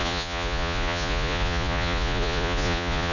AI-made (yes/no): yes